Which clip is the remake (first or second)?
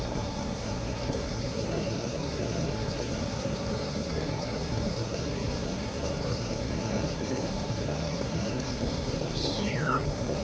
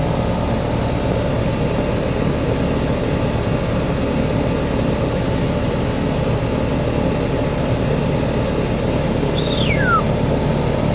first